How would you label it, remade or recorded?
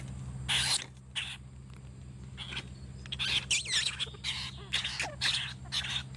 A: recorded